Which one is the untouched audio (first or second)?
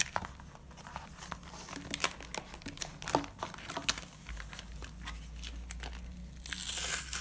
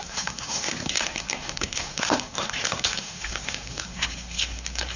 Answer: first